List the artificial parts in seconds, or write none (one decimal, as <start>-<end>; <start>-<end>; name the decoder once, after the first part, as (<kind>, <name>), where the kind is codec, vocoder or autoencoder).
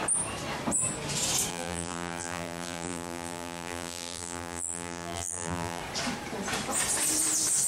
1.5-5.8 (vocoder, BigVGAN v2)